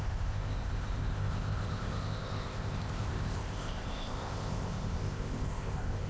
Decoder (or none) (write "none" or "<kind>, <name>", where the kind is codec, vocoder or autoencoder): codec, ZipCodec